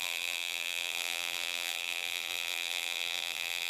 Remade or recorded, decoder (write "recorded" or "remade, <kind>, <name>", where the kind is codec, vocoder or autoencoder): remade, vocoder, BigVGAN v2